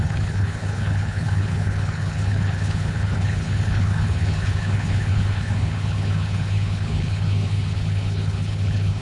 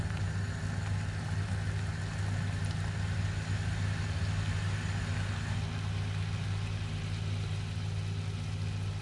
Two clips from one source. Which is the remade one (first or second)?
first